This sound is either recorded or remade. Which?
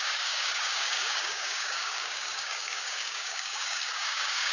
remade